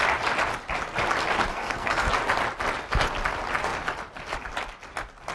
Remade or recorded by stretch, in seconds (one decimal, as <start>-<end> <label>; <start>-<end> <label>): 0.0-1.5 recorded; 1.5-2.1 remade; 2.1-5.3 recorded